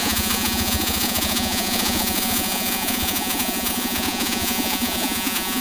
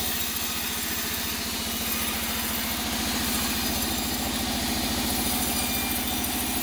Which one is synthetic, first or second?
first